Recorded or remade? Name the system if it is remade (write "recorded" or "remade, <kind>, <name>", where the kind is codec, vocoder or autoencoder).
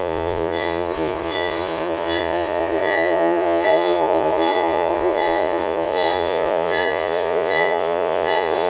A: remade, vocoder, Vocos